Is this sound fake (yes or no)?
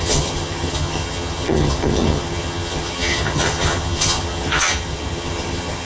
yes